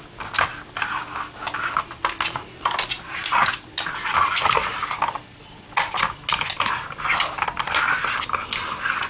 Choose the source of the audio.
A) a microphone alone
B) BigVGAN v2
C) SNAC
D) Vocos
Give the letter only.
A